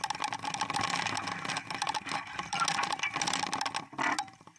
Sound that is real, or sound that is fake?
real